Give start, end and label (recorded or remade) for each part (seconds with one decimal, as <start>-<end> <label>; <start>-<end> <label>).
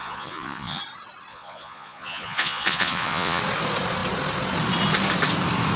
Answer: 0.0-0.8 remade; 0.8-1.3 recorded; 1.3-3.4 remade; 3.4-5.8 recorded